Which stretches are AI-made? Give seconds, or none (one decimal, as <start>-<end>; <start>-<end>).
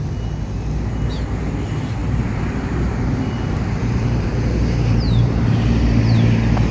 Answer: 2.0-6.0